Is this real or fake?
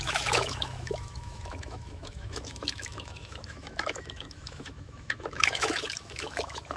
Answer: fake